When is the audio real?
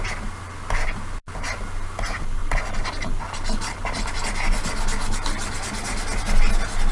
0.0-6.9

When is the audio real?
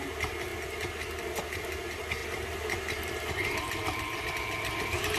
0.0-2.2; 4.3-5.2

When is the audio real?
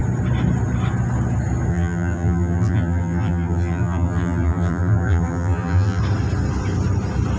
0.0-1.7; 6.0-7.4